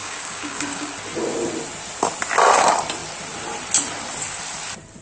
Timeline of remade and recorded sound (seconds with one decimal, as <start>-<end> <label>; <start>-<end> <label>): 0.0-0.9 remade; 0.9-5.0 recorded